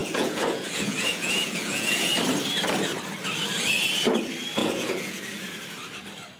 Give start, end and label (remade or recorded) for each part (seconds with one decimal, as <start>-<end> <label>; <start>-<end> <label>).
0.0-2.1 remade; 2.1-4.6 recorded; 4.6-5.2 remade; 5.2-6.4 recorded